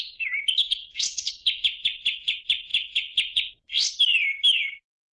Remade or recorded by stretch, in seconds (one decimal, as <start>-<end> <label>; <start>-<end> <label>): 0.0-0.6 recorded; 0.6-1.3 remade; 1.3-5.1 recorded